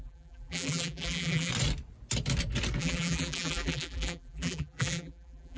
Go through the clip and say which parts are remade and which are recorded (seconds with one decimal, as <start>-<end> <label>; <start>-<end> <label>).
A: 0.0-1.5 remade; 1.5-2.8 recorded; 2.8-5.6 remade